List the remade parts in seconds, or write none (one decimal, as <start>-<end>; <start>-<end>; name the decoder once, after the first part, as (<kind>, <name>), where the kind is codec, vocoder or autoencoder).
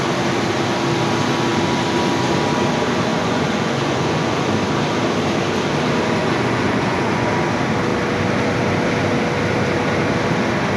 3.1-4.5 (vocoder, Vocos); 6.2-7.3